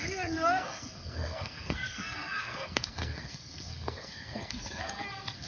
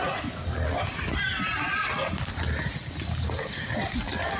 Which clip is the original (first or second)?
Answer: second